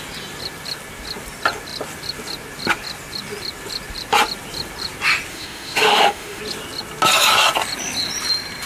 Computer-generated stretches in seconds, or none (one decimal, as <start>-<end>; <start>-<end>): 5.3-6.4